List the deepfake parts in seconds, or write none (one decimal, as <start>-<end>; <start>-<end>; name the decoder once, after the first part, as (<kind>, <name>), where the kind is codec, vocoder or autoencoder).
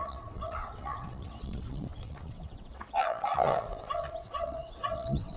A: 0.0-5.4 (vocoder, WaveNeXt)